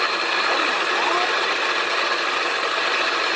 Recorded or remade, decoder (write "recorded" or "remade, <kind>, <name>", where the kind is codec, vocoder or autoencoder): recorded